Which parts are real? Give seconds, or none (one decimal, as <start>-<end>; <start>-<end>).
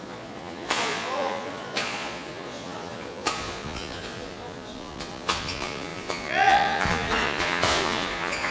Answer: none